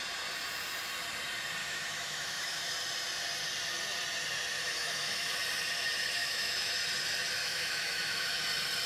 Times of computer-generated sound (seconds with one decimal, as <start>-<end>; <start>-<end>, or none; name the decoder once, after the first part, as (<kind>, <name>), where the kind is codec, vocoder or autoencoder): 1.6-2.6 (autoencoder, DAC-VAE); 4.6-5.3; 6.2-6.7; 7.4-8.3